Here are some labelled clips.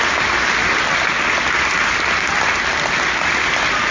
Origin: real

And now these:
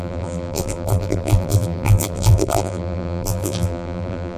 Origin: fake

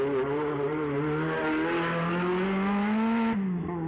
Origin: real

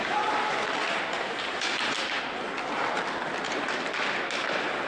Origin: real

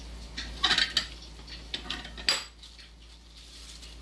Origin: real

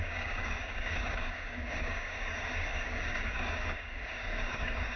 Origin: fake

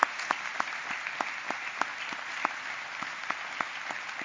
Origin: real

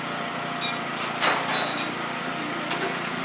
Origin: real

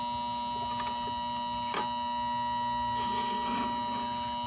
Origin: real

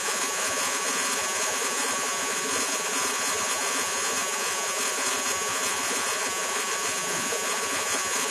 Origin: fake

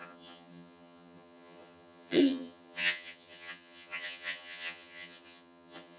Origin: fake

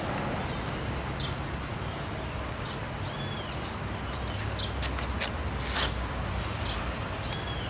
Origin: real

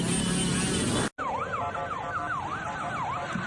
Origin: real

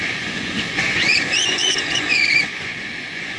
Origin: fake